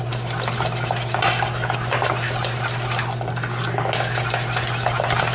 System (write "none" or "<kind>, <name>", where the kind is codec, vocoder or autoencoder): none